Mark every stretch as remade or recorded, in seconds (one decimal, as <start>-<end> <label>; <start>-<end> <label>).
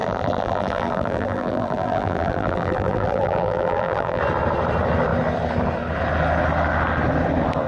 0.0-4.2 remade; 4.2-7.7 recorded